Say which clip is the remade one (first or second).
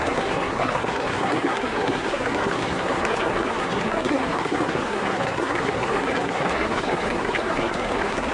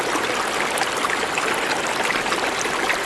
first